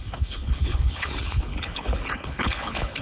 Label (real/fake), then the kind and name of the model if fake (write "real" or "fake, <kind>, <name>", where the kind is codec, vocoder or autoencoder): fake, codec, HILCodec